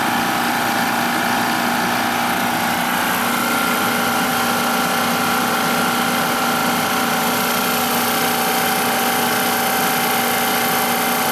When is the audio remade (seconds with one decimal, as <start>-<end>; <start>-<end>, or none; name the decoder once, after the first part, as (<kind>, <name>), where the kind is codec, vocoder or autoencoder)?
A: none